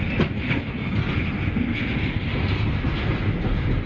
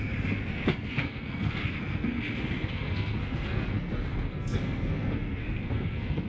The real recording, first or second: first